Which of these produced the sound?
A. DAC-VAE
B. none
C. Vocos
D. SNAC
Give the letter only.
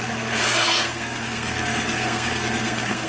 D